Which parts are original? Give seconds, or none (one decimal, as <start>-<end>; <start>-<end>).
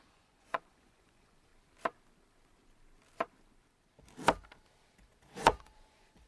1.5-5.3